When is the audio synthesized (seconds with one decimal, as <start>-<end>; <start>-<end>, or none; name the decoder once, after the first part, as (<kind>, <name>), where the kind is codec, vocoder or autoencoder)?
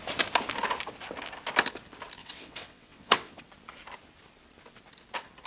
2.2-3.4 (vocoder, WaveNeXt)